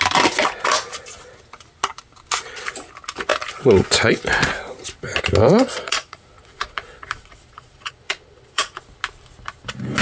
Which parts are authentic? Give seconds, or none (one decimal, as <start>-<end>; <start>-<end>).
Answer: 0.0-5.4; 8.8-10.0